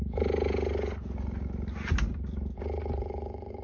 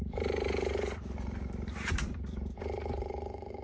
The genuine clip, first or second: first